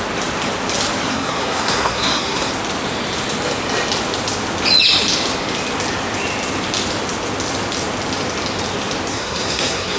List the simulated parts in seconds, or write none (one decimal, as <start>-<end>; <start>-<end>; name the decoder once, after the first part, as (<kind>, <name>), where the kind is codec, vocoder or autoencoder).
1.1-2.5 (codec, SNAC); 9.1-10.0